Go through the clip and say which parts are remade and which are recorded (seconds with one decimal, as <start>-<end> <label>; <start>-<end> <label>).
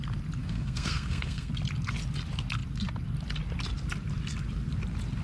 0.0-0.4 recorded; 0.4-1.5 remade; 1.5-5.2 recorded